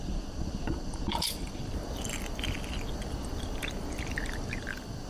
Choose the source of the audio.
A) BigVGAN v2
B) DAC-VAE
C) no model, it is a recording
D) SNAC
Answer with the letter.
A